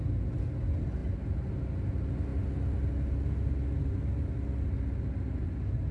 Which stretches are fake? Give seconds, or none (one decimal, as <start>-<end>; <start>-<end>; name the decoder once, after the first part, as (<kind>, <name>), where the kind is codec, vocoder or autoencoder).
none